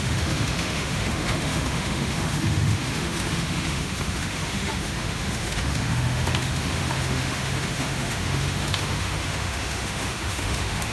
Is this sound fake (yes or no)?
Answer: yes